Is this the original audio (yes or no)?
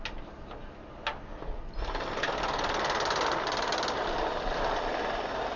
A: yes